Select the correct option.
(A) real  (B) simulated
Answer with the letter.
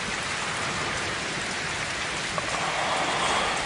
A